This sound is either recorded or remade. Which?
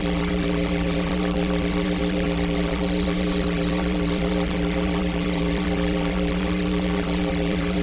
remade